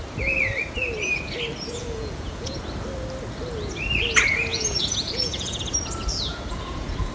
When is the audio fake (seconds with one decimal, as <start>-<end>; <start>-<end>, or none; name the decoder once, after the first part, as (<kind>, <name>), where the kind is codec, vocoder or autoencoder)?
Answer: 1.8-2.6 (vocoder, Vocos); 4.5-5.6; 6.3-7.1